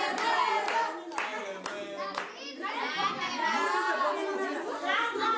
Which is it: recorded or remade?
recorded